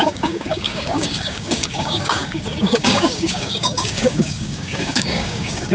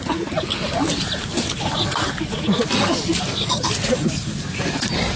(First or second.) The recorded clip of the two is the second